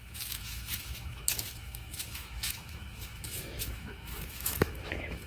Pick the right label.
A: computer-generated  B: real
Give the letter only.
A